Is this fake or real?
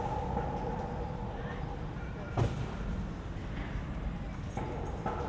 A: real